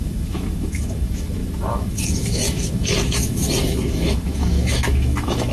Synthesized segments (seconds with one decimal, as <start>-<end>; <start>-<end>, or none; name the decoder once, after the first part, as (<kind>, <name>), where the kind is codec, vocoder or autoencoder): 0.0-5.5 (autoencoder, DAC-VAE)